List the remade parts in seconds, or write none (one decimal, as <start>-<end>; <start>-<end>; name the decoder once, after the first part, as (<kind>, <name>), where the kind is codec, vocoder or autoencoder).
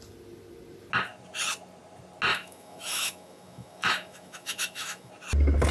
2.3-5.1 (autoencoder, DAC-VAE)